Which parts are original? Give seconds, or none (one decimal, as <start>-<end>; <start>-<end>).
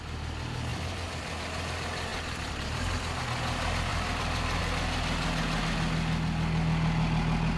0.0-0.7; 1.4-2.1; 3.2-3.9; 4.6-7.6